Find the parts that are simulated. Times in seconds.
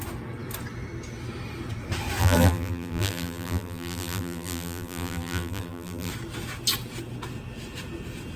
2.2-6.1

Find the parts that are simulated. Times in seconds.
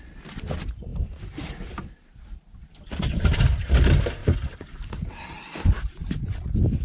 4.2-4.9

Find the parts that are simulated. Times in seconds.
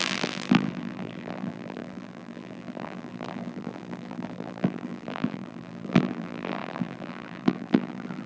0.0-8.3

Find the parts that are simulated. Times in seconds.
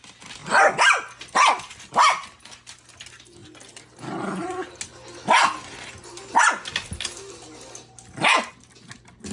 none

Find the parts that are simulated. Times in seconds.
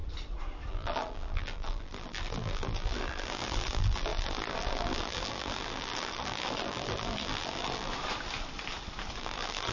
0.7-7.9; 9.2-9.7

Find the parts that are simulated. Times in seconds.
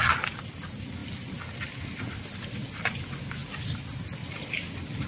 none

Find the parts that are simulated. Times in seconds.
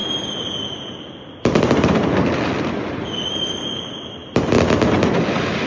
0.0-3.4; 4.2-5.7